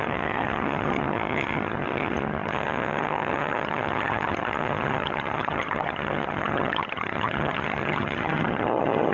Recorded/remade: remade